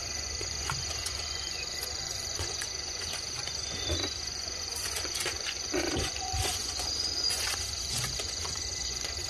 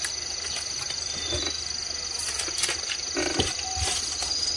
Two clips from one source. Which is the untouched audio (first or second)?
second